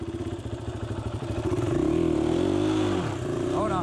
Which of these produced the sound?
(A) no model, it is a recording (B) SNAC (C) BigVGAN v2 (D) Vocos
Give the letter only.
C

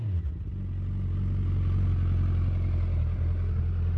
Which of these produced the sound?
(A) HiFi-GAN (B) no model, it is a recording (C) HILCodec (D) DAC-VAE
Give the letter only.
B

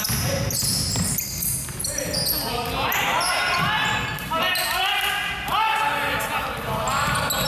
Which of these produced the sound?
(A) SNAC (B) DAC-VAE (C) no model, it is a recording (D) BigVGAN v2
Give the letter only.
C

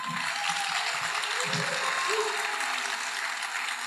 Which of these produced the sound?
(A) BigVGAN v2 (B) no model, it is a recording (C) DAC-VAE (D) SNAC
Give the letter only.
B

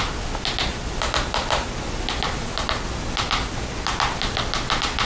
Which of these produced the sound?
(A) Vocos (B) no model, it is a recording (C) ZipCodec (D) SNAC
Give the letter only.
B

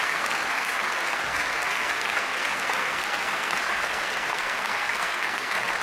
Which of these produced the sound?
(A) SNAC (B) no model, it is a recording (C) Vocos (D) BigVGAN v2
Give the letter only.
A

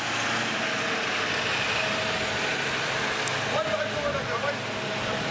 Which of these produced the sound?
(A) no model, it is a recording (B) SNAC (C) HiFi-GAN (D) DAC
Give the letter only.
A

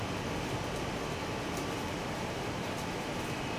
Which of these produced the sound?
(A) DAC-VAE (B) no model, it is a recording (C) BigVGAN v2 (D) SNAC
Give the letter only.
B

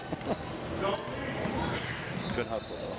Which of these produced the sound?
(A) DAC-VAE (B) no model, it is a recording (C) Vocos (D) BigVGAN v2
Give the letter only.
B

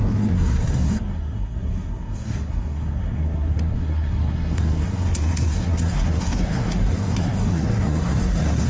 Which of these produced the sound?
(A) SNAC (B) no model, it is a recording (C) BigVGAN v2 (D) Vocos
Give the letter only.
A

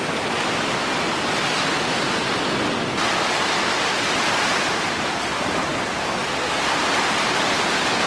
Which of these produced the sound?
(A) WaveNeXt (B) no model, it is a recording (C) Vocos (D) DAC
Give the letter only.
B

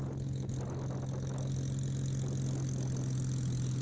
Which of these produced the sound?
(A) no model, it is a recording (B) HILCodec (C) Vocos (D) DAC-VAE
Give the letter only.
A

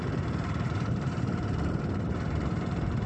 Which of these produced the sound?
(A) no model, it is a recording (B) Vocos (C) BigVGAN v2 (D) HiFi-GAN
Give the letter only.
C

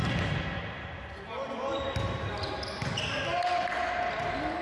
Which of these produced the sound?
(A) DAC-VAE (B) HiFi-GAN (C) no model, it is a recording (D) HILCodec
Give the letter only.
C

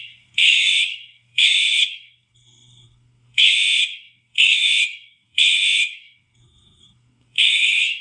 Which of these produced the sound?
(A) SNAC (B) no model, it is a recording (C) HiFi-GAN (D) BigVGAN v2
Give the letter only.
A